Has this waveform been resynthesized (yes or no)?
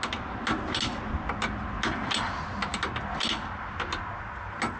no